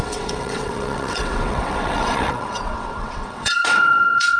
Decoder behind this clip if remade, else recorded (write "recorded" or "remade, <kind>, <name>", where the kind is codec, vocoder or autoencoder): remade, vocoder, WaveNeXt